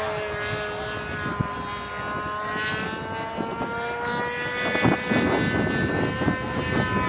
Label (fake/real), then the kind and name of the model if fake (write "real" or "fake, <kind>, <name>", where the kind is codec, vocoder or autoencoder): real